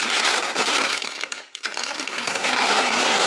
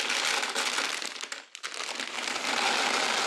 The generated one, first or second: first